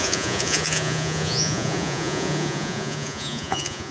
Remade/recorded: remade